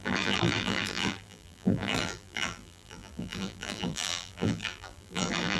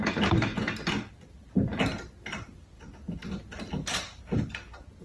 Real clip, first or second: second